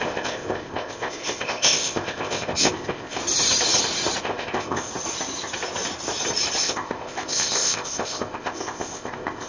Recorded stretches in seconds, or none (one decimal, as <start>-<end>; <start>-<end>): 3.2-4.2; 4.9-6.6